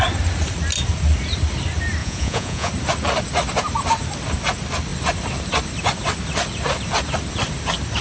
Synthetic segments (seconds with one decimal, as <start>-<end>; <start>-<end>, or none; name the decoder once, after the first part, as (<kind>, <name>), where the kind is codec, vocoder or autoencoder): 2.0-2.7 (vocoder, Vocos)